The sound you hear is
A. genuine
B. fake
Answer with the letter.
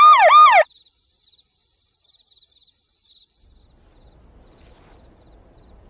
A